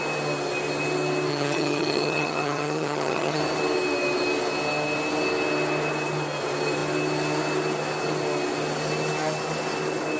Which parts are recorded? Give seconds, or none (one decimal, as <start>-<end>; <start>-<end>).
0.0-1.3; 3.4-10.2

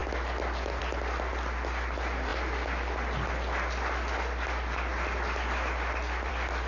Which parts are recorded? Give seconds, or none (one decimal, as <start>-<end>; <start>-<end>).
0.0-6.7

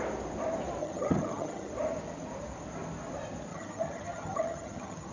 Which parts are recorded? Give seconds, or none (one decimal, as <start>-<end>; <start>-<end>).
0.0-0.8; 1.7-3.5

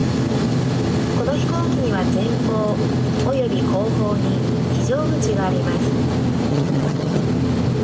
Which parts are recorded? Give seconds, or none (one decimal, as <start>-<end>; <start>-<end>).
0.0-6.5; 7.2-7.8

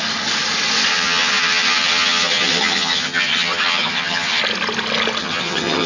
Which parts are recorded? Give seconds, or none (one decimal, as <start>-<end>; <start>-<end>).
0.0-0.9; 4.4-5.2

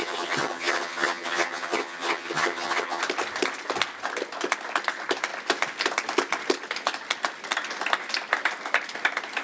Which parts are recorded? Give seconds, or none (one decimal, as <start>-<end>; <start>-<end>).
3.0-9.4